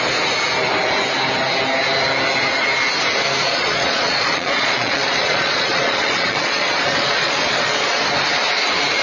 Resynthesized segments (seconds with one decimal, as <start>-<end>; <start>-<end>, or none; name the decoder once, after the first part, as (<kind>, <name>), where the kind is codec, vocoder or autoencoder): 3.5-8.0 (vocoder, Vocos)